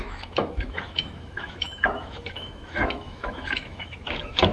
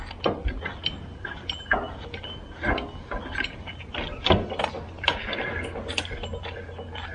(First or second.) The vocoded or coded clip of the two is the first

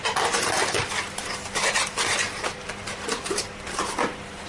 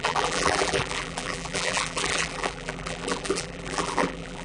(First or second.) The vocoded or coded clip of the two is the second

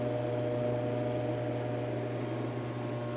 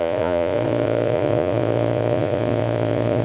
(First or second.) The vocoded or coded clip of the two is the second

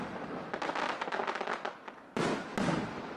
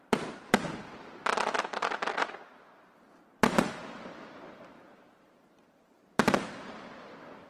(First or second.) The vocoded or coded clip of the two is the second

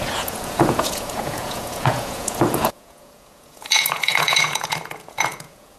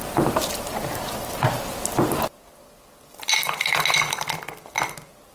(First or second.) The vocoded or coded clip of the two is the first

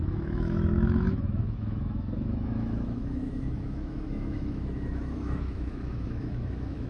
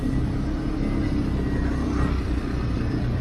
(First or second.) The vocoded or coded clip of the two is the first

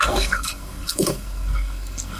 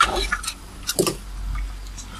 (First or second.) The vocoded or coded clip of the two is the first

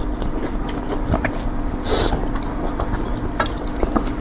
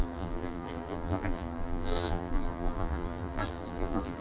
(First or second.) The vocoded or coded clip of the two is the second